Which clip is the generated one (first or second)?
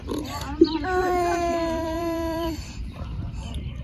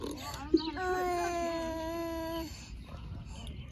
first